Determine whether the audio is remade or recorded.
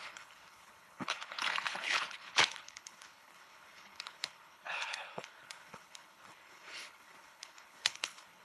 remade